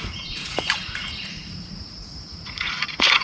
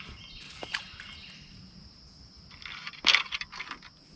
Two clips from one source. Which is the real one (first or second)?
second